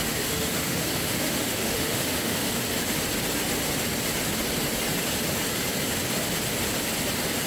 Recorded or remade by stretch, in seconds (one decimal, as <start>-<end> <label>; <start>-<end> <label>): 0.0-2.6 remade; 2.6-7.5 recorded